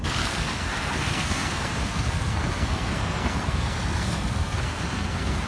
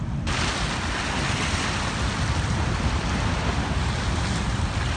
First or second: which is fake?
first